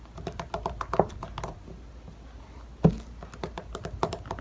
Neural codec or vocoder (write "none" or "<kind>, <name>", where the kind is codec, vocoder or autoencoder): none